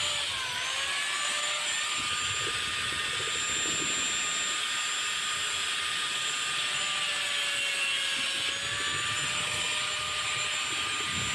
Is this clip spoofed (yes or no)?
no